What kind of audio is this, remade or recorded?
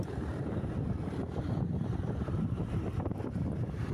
remade